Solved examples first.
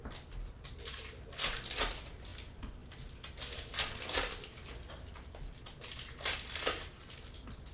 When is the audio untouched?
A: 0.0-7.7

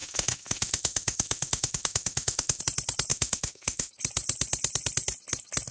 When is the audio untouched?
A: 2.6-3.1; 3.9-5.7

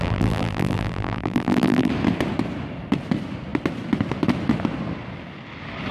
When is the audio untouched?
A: 1.9-5.9

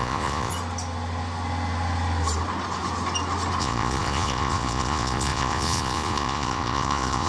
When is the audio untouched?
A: 0.5-3.6

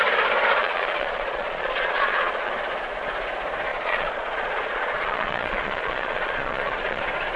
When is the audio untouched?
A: 0.0-0.6; 2.5-3.7; 7.0-7.4

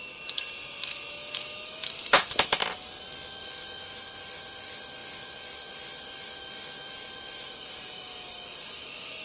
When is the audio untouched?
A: 2.6-3.4